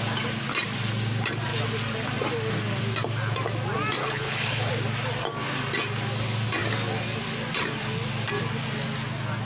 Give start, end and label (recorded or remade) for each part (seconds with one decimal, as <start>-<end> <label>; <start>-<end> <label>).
0.0-4.0 recorded; 4.0-4.7 remade; 4.7-9.5 recorded